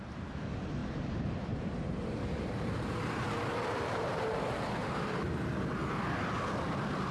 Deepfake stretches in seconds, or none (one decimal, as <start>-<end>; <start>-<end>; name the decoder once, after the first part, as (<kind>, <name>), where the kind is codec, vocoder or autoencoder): 0.8-5.1 (vocoder, BigVGAN v2); 5.8-6.3